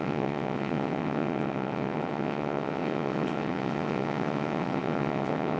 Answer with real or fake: fake